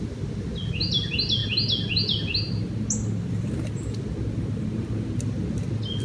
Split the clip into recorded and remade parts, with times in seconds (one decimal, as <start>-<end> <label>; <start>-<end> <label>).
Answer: 0.0-6.0 recorded